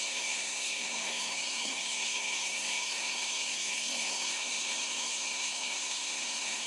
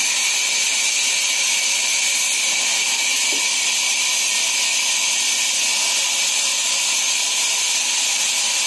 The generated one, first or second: first